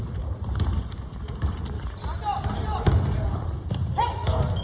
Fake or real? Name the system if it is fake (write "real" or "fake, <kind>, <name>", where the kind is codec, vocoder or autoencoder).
fake, vocoder, BigVGAN v2